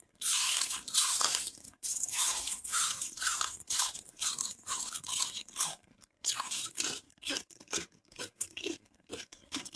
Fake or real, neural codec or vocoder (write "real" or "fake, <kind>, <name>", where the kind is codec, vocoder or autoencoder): fake, codec, SNAC